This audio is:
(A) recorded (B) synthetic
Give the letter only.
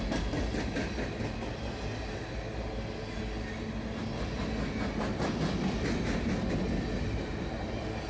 A